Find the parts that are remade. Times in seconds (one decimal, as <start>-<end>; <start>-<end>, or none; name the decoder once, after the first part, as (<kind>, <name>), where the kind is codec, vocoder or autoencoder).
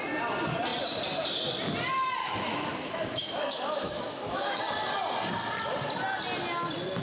2.2-4.6 (autoencoder, DAC-VAE)